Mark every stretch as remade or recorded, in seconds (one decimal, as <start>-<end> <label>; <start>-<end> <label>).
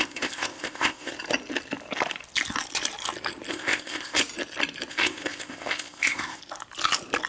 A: 0.0-1.1 remade; 1.1-3.5 recorded; 3.5-4.2 remade; 4.2-4.9 recorded; 4.9-6.4 remade; 6.4-7.3 recorded